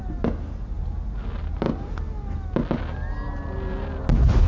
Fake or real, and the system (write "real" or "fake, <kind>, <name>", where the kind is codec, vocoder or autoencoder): real